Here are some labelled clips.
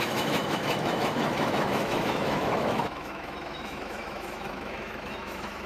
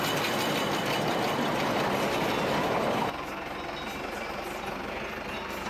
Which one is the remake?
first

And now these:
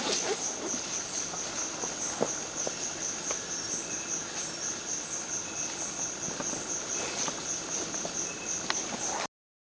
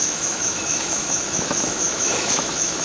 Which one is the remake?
second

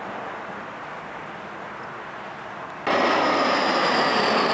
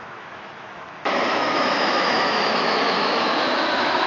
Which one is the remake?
second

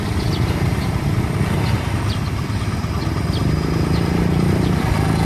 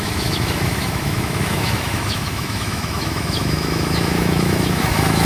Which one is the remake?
second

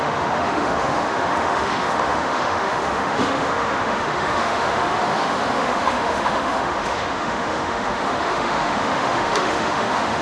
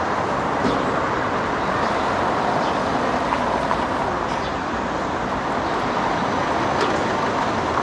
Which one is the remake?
first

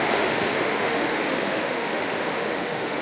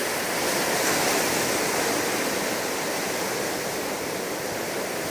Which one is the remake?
first